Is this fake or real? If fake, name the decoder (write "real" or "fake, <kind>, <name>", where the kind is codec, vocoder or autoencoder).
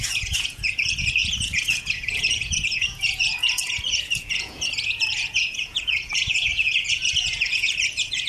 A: fake, vocoder, Vocos